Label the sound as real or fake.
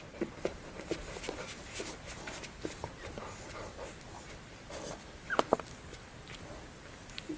real